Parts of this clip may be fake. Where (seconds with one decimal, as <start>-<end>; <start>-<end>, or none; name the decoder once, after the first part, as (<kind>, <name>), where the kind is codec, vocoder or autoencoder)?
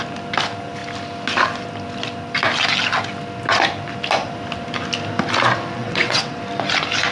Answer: 5.8-6.4 (vocoder, WaveNeXt)